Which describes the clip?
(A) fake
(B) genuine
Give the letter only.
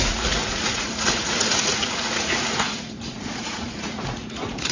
A